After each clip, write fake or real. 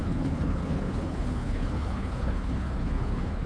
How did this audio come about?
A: fake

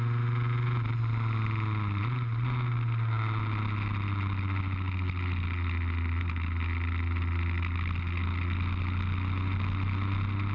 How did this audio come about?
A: real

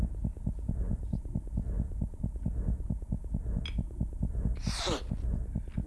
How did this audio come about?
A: real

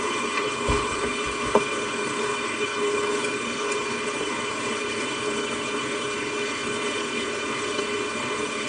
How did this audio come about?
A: fake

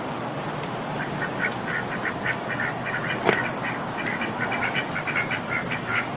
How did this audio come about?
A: real